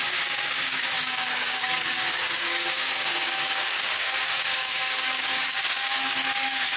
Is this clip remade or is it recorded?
remade